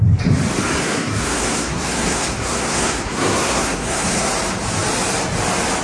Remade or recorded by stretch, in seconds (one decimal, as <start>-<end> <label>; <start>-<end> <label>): 0.0-0.8 recorded; 0.8-4.3 remade; 4.3-5.8 recorded